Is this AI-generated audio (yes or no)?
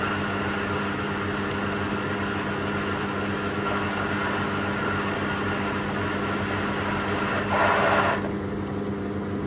no